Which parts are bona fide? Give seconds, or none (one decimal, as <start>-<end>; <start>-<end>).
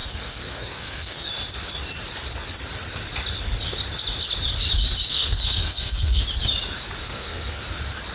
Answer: 1.3-5.1; 6.2-7.0; 7.6-8.1